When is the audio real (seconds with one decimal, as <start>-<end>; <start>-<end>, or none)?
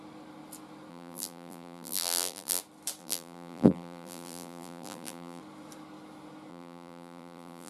0.0-0.9; 2.6-3.0; 5.4-6.5